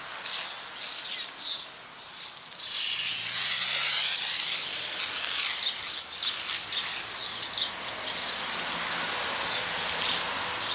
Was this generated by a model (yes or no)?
no